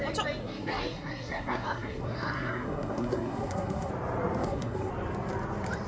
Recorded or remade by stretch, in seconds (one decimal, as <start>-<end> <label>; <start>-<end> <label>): 0.0-0.4 recorded; 0.4-3.9 remade; 3.9-4.4 recorded; 4.4-4.9 remade; 4.9-5.9 recorded